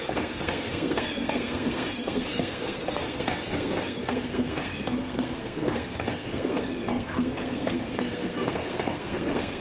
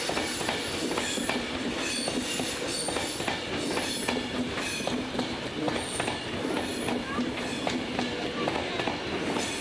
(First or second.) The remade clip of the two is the first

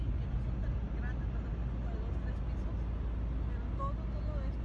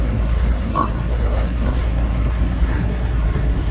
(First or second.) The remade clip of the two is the second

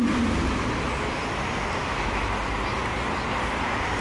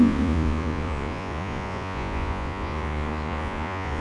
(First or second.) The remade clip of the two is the second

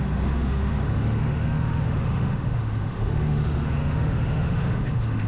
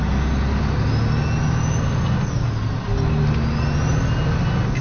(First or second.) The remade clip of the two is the first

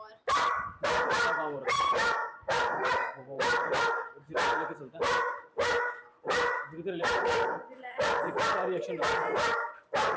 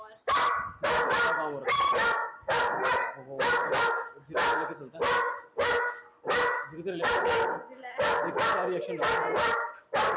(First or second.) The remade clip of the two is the first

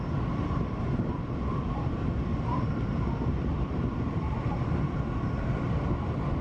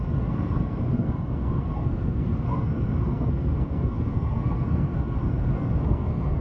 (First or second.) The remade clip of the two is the second